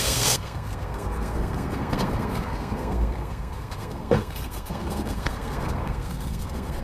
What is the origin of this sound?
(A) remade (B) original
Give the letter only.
A